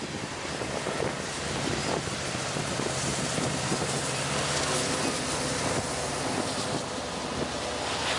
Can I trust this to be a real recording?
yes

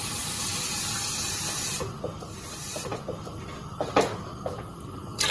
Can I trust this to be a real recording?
yes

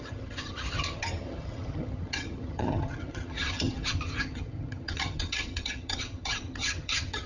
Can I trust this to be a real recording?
no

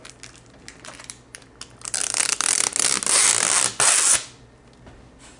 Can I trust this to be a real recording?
yes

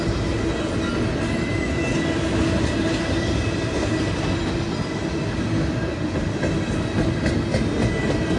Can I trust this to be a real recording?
yes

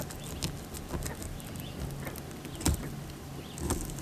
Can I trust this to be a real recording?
yes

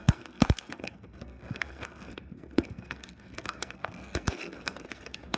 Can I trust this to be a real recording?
no